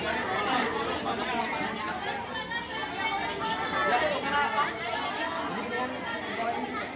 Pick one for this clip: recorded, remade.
recorded